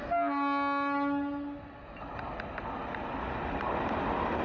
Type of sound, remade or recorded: recorded